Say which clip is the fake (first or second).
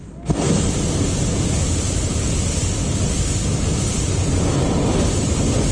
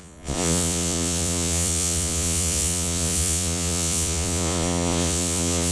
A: second